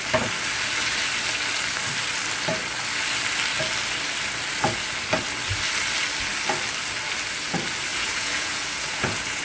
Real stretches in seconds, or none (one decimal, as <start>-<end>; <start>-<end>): 0.0-7.9